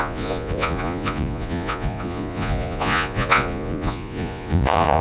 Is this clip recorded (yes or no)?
no